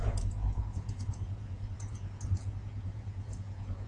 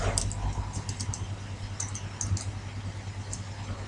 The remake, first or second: first